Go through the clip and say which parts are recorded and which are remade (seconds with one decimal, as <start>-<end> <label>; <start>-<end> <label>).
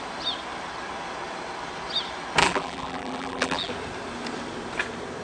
0.0-2.4 recorded; 2.4-3.7 remade; 3.7-5.2 recorded